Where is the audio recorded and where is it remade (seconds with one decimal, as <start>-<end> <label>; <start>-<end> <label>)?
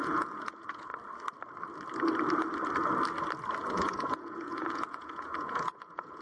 0.0-0.9 remade; 0.9-3.7 recorded; 3.7-6.2 remade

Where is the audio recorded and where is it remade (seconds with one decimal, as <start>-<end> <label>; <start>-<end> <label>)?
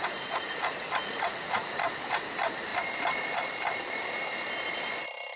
0.0-1.8 remade; 1.8-5.4 recorded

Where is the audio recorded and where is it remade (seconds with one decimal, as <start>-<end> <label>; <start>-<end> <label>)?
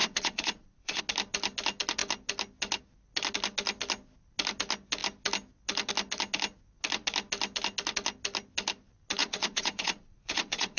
0.0-1.0 remade; 1.0-9.2 recorded; 9.2-10.8 remade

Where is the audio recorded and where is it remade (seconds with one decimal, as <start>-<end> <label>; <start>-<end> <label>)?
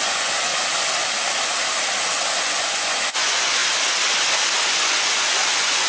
0.0-0.5 remade; 0.5-2.3 recorded; 2.3-3.6 remade; 3.6-4.7 recorded; 4.7-5.9 remade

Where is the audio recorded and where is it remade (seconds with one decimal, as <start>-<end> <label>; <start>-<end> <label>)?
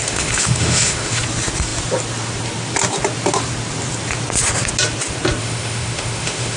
0.0-1.2 remade; 1.2-5.4 recorded; 5.4-6.6 remade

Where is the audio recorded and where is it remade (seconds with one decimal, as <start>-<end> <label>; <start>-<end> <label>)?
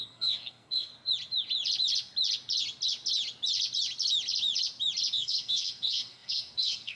0.0-0.9 remade; 0.9-5.1 recorded; 5.1-7.0 remade